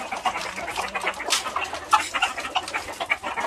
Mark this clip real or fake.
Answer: real